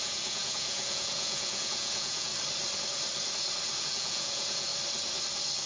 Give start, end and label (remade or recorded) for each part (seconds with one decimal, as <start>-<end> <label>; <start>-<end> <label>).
0.0-2.3 remade; 2.3-3.8 recorded; 3.8-4.7 remade; 4.7-5.7 recorded